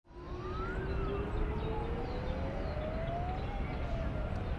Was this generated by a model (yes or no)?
no